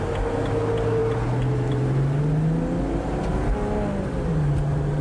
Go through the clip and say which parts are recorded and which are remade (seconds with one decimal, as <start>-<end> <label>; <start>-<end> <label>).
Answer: 0.0-5.0 recorded